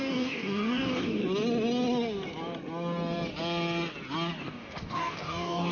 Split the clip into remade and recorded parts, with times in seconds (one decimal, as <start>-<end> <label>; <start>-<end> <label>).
0.0-1.2 remade; 1.2-4.4 recorded; 4.4-5.7 remade